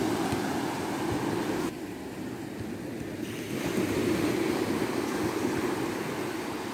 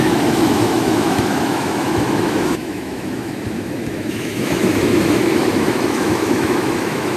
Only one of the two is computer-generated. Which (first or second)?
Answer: second